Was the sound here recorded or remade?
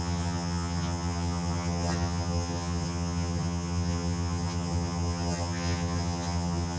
remade